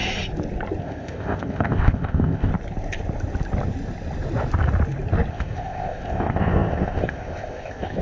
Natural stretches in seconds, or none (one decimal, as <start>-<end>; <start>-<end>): 0.0-0.8; 2.5-5.3